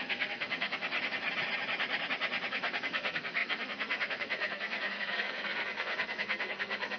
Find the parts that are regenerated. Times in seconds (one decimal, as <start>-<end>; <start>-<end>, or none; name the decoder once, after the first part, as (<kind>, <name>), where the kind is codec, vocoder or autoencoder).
0.0-0.8 (codec, SNAC); 2.5-7.0